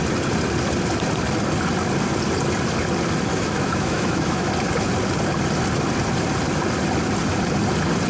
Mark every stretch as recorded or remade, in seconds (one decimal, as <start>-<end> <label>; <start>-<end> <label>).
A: 0.0-3.3 recorded; 3.3-4.5 remade; 4.5-8.1 recorded